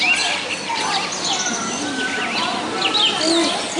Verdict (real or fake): real